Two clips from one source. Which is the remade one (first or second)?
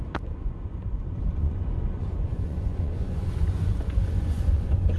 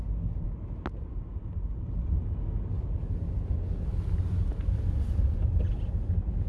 first